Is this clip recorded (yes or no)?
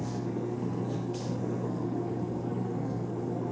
no